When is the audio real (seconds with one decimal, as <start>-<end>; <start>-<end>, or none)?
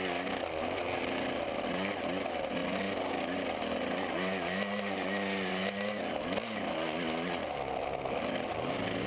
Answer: 0.0-9.1